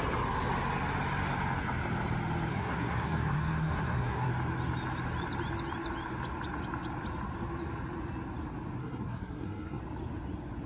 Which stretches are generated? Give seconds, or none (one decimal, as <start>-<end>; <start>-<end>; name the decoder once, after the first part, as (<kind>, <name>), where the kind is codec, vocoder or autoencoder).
2.5-4.3 (codec, SNAC); 8.8-9.8